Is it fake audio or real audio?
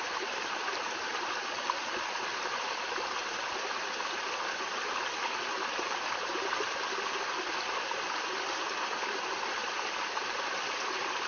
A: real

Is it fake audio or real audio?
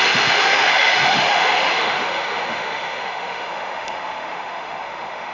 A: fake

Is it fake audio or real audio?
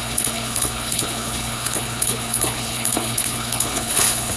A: fake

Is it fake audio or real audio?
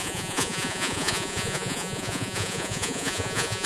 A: fake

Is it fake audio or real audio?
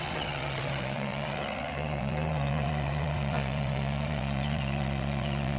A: fake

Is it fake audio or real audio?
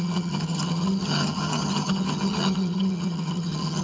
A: fake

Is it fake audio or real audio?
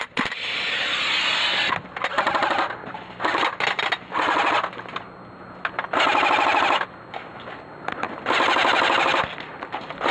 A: real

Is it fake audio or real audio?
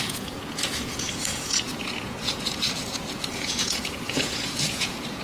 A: fake